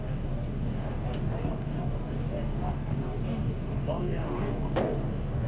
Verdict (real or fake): fake